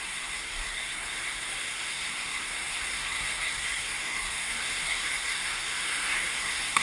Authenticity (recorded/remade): remade